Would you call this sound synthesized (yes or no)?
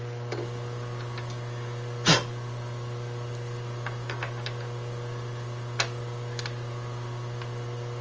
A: no